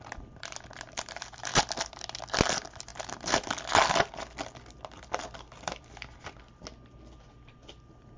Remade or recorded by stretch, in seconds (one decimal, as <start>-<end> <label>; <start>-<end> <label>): 0.0-8.2 recorded